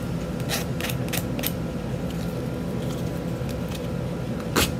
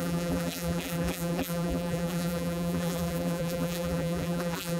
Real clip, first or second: first